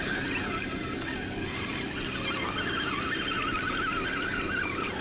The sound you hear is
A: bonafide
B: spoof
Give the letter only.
A